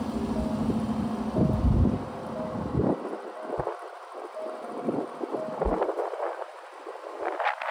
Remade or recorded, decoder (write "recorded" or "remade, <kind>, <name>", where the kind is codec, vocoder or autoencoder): recorded